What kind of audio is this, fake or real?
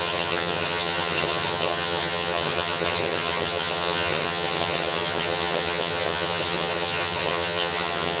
fake